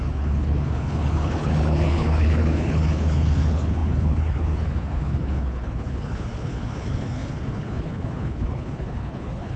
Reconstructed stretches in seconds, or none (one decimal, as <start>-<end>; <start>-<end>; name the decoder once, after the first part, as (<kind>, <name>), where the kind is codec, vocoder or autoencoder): 0.0-9.6 (codec, HILCodec)